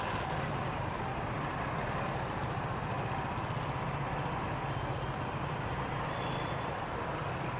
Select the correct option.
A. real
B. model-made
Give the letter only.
A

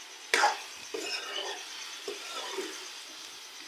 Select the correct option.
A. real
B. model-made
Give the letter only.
A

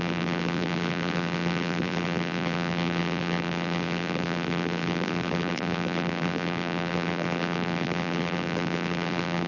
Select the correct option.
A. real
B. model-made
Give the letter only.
B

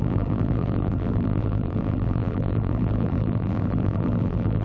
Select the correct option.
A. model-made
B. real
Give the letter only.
A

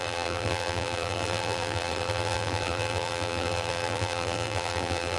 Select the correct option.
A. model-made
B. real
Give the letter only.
A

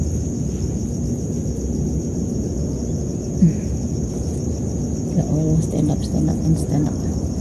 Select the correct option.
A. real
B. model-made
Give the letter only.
A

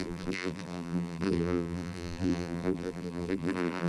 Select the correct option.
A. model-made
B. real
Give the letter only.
A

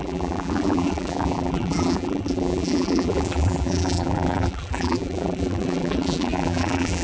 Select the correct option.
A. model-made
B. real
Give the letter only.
A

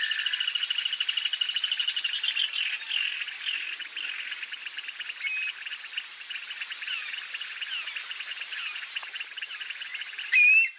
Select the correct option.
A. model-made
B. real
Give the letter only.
B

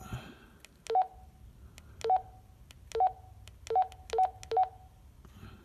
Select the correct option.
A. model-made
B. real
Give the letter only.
B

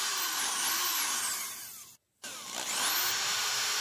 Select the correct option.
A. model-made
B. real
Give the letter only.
B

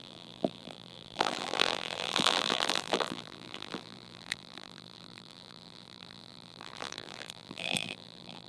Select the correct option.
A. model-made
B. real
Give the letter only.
A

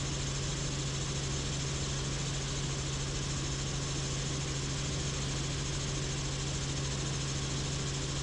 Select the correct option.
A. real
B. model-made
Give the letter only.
A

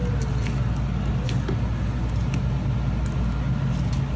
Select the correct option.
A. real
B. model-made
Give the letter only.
A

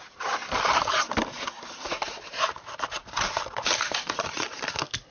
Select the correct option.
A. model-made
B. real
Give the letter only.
A